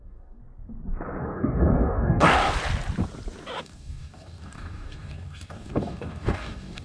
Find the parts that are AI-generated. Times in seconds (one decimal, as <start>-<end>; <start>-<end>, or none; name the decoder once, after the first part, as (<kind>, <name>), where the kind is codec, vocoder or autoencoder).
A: 0.0-0.4 (codec, DAC); 1.2-2.4; 3.6-6.8